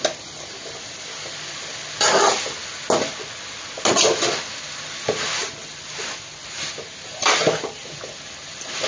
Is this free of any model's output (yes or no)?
yes